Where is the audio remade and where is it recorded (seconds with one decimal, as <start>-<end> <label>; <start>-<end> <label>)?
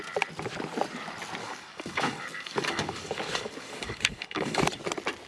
0.0-1.4 recorded; 1.4-4.6 remade; 4.6-5.3 recorded